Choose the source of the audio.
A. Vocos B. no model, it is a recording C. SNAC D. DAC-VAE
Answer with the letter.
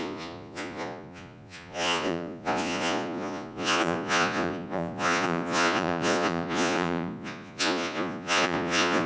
A